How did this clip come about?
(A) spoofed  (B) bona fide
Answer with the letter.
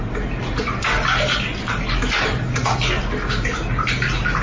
B